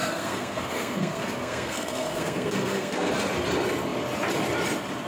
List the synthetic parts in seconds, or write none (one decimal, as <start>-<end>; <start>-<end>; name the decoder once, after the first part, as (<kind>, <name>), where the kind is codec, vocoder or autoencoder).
0.0-3.1 (codec, SNAC)